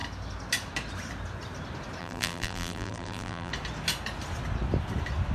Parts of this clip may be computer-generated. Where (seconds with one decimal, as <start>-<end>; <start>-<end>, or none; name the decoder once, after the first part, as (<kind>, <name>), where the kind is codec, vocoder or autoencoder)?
2.0-3.5 (vocoder, BigVGAN v2)